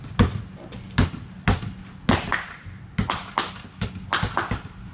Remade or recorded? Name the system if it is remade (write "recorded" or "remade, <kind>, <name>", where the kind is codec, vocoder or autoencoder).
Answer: recorded